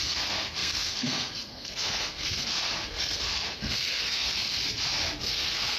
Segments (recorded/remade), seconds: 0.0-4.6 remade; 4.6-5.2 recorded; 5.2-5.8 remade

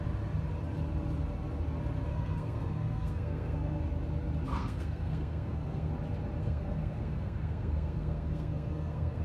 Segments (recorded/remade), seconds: 0.0-2.1 recorded; 2.1-3.8 remade; 3.8-4.5 recorded; 4.5-5.9 remade; 5.9-6.4 recorded; 6.4-9.2 remade

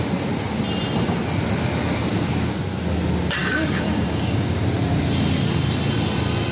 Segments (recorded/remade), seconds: 0.0-3.4 recorded; 3.4-4.6 remade; 4.6-6.5 recorded

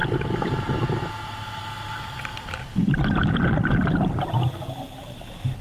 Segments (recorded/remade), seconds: 0.0-1.5 remade; 1.5-2.3 recorded; 2.3-3.0 remade; 3.0-5.6 recorded

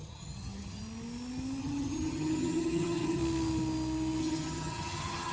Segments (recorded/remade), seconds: 0.0-0.8 remade; 0.8-1.6 recorded; 1.6-3.2 remade; 3.2-4.2 recorded; 4.2-5.3 remade

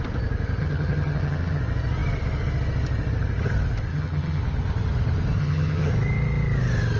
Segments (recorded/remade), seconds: 0.0-0.6 recorded; 0.6-1.6 remade; 1.6-3.9 recorded; 3.9-4.4 remade; 4.4-5.4 recorded; 5.4-5.9 remade; 5.9-7.0 recorded